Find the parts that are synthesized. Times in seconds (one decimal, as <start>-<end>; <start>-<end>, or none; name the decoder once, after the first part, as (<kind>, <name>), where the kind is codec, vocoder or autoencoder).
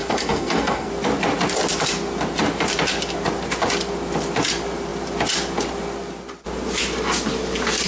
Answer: 0.0-0.9 (codec, SNAC)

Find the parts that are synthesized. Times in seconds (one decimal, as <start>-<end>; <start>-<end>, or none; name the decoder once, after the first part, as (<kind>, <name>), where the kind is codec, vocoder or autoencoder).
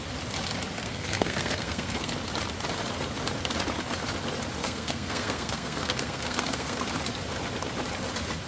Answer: 0.8-2.1 (codec, SNAC); 4.6-6.8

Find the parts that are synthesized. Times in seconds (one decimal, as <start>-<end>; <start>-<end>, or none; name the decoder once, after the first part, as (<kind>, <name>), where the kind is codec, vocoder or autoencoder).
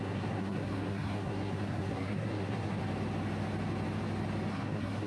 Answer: 0.0-2.8 (codec, SNAC); 4.5-5.1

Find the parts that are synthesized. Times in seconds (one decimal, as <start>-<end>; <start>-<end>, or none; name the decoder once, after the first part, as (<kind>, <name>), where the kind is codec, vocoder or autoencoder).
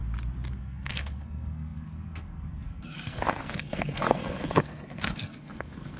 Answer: 0.6-6.0 (codec, SNAC)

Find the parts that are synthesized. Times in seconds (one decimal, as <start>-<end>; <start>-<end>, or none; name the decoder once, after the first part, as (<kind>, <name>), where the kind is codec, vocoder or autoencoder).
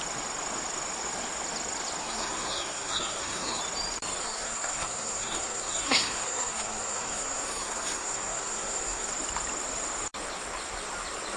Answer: 2.0-3.6 (codec, SNAC); 4.2-9.1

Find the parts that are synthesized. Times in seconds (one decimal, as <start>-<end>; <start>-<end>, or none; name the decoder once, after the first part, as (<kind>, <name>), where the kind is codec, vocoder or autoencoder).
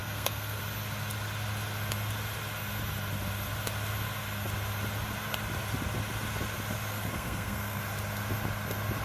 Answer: 0.0-0.6 (codec, SNAC); 6.9-7.8